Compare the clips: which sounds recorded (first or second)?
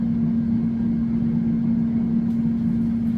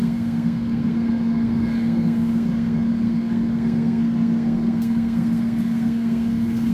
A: first